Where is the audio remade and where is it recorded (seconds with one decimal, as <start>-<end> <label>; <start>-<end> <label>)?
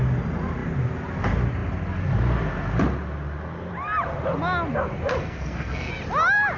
0.0-5.2 recorded; 5.2-5.9 remade; 5.9-6.6 recorded